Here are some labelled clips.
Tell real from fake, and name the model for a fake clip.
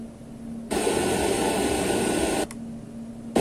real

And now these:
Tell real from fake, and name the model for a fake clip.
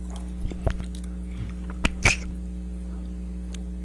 real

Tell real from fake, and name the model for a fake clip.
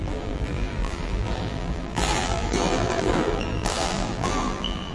fake, vocoder, BigVGAN v2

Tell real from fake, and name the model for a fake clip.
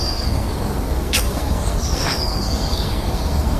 fake, codec, SNAC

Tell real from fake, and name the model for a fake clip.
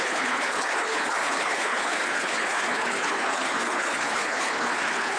fake, codec, HILCodec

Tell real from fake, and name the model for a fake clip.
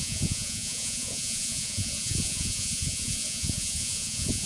fake, vocoder, Vocos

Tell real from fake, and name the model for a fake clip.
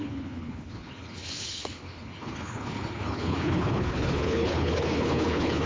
fake, codec, HILCodec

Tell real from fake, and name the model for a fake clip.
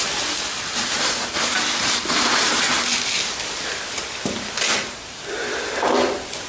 real